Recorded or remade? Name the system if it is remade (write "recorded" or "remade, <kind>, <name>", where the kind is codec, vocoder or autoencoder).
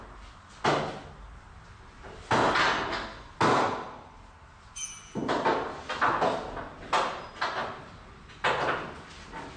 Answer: recorded